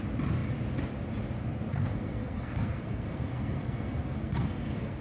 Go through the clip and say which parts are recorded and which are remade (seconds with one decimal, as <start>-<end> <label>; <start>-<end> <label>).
0.0-1.7 recorded; 1.7-5.0 remade